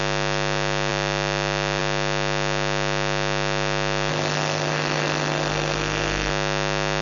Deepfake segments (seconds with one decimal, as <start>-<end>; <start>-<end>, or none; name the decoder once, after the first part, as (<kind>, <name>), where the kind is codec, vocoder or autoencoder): 4.1-6.3 (codec, SNAC)